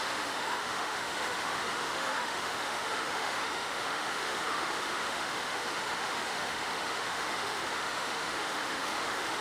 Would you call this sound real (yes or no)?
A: no